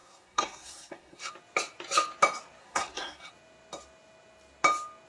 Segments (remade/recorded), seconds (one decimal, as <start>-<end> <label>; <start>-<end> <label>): 0.0-1.3 remade; 1.3-2.6 recorded; 2.6-3.3 remade; 3.3-5.1 recorded